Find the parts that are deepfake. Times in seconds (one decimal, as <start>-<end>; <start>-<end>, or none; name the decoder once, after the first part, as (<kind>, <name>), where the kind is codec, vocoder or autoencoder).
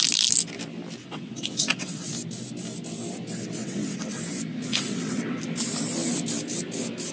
1.0-2.1 (vocoder, WaveNeXt); 3.6-4.2; 4.7-5.4